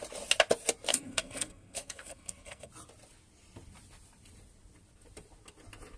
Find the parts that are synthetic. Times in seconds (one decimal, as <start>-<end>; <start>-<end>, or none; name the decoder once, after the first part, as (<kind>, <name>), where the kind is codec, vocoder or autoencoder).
0.9-2.7 (codec, SNAC)